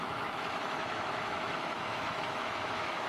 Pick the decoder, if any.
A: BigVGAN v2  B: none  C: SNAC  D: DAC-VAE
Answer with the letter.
D